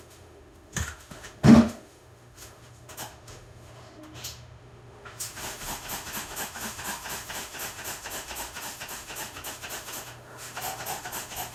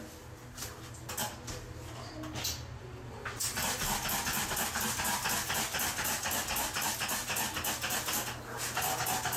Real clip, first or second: second